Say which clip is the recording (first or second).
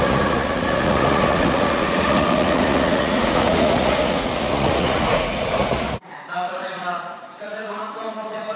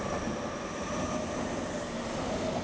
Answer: second